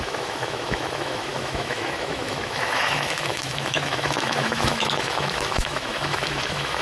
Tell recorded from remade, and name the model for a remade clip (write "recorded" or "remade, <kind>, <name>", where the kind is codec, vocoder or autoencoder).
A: remade, autoencoder, DAC-VAE